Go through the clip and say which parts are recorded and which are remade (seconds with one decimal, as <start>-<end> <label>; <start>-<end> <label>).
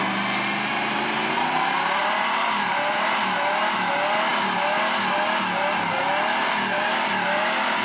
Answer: 0.0-0.7 recorded; 0.7-3.2 remade; 3.2-7.8 recorded